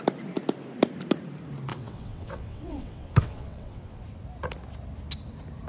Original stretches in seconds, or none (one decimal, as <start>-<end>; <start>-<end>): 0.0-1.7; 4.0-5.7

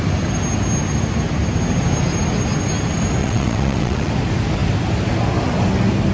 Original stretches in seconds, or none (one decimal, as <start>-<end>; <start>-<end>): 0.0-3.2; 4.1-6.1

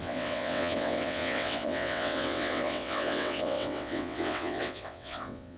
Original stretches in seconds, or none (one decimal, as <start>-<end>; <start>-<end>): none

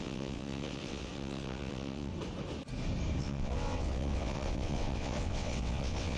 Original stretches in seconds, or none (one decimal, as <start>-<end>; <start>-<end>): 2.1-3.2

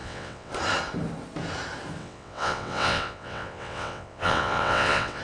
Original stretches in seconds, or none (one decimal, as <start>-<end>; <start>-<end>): 0.5-2.0

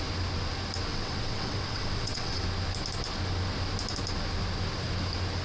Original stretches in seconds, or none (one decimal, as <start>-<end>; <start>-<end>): 0.0-0.9; 2.4-5.4

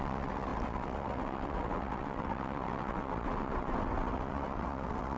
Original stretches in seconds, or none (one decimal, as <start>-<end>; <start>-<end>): none